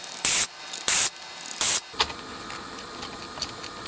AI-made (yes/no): no